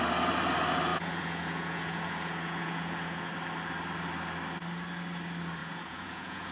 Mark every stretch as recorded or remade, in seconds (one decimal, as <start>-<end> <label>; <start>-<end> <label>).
0.0-0.9 recorded; 0.9-3.3 remade; 3.3-5.6 recorded; 5.6-6.5 remade